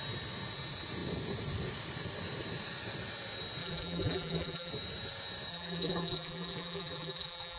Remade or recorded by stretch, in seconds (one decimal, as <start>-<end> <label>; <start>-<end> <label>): 0.0-3.6 recorded; 3.6-4.7 remade; 4.7-5.5 recorded; 5.5-7.6 remade